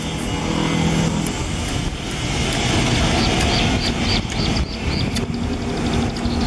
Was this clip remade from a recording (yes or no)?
no